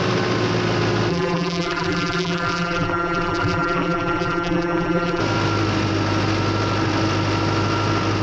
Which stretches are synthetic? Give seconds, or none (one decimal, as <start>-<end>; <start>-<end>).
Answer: 1.1-5.2